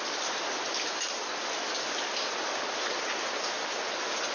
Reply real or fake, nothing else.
real